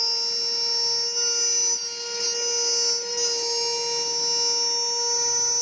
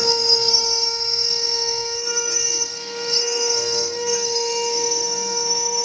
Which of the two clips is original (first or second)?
first